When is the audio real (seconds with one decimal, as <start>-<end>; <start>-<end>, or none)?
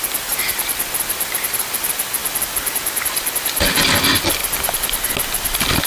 0.0-5.9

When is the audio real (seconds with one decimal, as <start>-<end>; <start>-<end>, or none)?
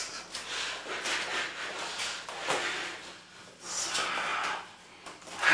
0.0-4.3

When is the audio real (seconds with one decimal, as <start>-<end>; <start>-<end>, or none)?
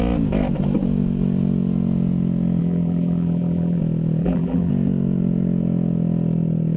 0.0-2.6; 3.8-4.2; 4.7-6.8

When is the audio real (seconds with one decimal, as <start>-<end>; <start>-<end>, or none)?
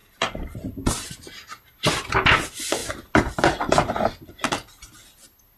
0.7-5.6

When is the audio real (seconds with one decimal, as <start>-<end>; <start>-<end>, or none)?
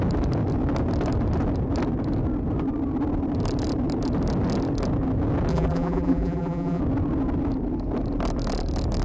0.0-5.5; 6.8-9.0